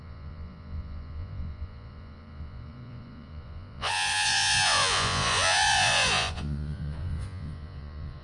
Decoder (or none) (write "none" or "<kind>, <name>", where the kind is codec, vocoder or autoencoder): vocoder, Vocos